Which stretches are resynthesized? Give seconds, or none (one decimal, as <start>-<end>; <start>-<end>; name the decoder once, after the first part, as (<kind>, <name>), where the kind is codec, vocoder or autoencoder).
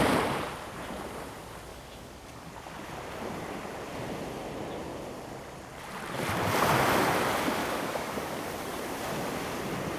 1.7-2.5 (codec, DAC); 7.6-8.5